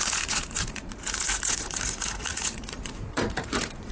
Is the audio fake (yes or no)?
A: yes